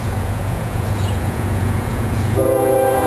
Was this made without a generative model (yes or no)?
no